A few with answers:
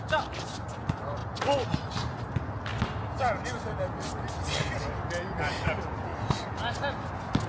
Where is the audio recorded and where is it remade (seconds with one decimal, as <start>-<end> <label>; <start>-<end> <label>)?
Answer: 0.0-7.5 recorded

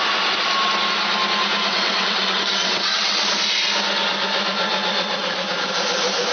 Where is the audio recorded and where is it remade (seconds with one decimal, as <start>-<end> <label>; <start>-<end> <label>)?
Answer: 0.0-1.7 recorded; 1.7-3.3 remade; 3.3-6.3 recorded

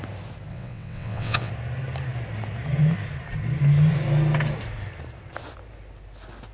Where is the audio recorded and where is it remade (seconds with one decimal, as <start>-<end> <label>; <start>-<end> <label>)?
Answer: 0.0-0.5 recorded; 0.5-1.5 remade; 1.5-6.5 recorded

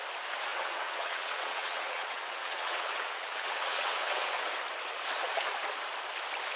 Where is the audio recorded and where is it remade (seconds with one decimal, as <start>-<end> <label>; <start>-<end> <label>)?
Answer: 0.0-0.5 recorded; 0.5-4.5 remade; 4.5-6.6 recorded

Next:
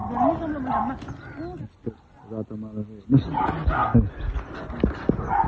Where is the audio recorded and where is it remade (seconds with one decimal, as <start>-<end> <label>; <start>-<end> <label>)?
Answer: 0.0-5.5 recorded

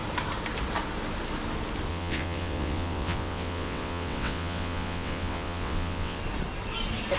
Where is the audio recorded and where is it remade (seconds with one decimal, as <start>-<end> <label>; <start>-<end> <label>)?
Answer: 0.0-1.9 recorded; 1.9-6.2 remade; 6.2-7.2 recorded

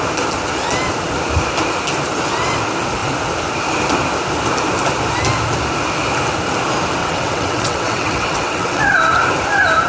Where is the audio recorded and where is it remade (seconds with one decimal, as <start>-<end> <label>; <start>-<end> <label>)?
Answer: 0.0-7.0 recorded; 7.0-8.8 remade; 8.8-9.9 recorded

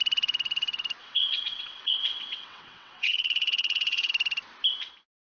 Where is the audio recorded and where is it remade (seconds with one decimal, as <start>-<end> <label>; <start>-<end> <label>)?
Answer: 0.0-1.0 recorded; 1.0-4.1 remade; 4.1-5.2 recorded